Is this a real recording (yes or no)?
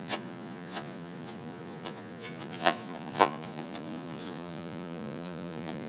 no